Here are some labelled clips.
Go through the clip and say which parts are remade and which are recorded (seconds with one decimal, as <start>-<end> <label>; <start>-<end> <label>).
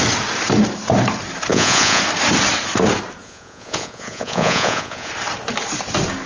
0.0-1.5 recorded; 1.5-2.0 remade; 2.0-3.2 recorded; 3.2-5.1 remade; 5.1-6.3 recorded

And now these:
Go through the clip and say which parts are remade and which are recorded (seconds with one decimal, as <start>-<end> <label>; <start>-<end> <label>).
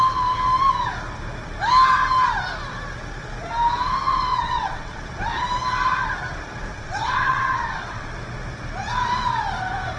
0.0-4.3 recorded; 4.3-5.0 remade; 5.0-6.7 recorded; 6.7-8.1 remade; 8.1-10.0 recorded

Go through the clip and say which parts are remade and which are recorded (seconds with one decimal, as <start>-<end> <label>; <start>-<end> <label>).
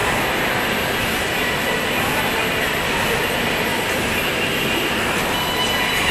0.0-6.1 recorded